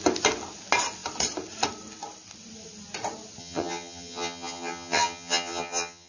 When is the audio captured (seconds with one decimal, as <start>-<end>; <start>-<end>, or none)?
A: 0.0-3.4